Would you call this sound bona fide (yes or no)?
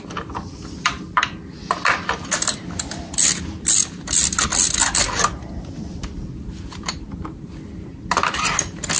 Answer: yes